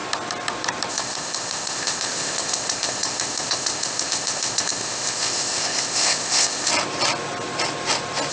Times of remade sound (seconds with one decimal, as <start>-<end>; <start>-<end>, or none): 0.9-6.7